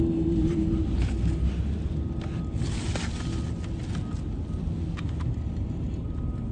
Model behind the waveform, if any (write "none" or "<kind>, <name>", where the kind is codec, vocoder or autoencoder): none